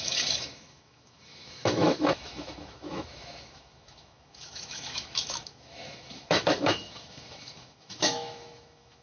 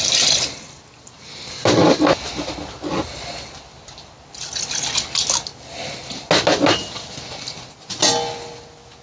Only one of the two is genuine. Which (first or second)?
second